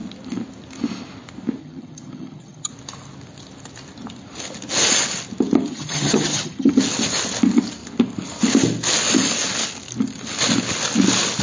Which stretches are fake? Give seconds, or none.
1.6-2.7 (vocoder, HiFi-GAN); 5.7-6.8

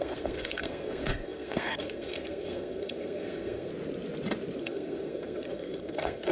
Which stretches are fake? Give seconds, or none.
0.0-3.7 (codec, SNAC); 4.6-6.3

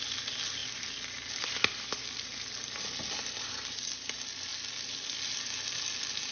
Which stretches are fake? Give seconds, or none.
0.6-3.5 (vocoder, BigVGAN v2)

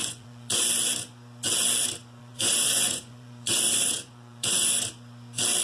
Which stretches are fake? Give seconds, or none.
0.0-0.6 (vocoder, Vocos); 2.2-4.7